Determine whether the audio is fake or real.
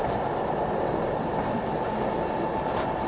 real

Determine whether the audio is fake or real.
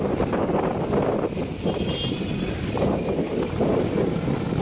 real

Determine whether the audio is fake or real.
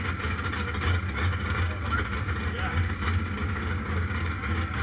fake